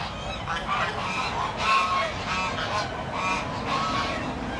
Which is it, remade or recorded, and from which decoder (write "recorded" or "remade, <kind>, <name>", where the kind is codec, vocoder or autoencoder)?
recorded